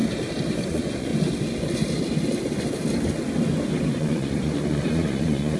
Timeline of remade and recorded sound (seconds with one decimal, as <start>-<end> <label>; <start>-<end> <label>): 0.0-0.6 recorded; 0.6-1.1 remade; 1.1-3.9 recorded; 3.9-5.6 remade